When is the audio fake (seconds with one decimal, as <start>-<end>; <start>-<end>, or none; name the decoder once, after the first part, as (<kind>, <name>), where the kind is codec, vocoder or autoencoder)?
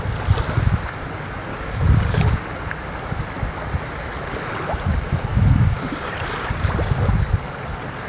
1.5-2.4 (codec, DAC); 5.3-6.1